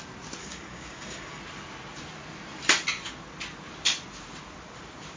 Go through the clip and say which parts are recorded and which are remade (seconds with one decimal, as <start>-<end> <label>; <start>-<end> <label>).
0.0-0.4 recorded; 0.4-1.4 remade; 1.4-5.2 recorded